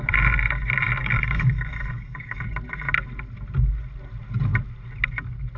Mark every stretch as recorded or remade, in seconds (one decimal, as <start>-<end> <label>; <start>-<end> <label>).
0.0-1.0 recorded; 1.0-2.4 remade; 2.4-5.6 recorded